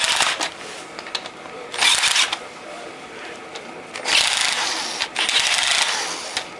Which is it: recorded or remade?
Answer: recorded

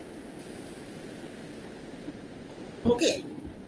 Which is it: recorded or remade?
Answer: recorded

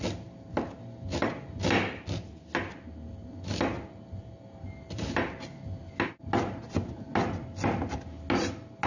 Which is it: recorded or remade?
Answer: recorded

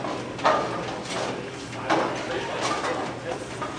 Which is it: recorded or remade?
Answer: recorded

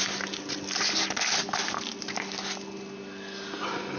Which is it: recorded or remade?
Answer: recorded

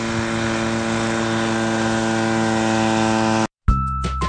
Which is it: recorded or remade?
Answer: recorded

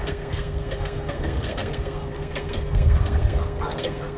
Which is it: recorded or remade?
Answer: remade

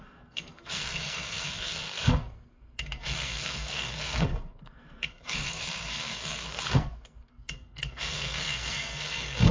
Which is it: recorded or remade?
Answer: remade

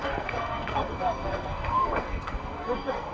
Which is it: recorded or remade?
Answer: remade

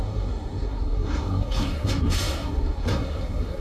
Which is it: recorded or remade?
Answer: remade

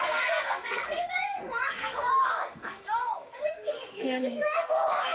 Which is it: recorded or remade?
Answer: remade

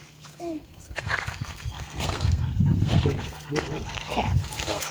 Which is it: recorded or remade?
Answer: remade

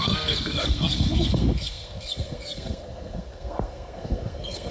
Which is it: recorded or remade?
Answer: remade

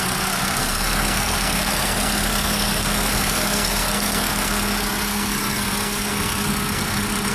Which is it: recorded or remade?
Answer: remade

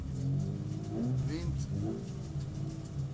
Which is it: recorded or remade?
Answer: recorded